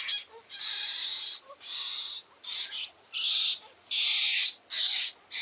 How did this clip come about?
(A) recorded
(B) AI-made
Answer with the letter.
A